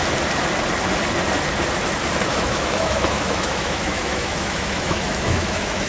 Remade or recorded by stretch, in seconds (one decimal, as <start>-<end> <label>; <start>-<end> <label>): 0.0-2.3 recorded; 2.3-5.9 remade